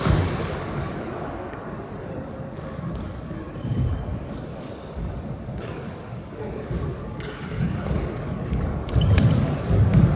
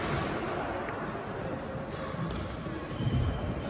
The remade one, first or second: first